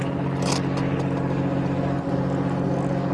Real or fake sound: real